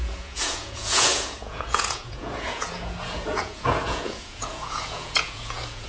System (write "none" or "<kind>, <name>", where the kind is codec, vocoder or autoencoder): vocoder, Vocos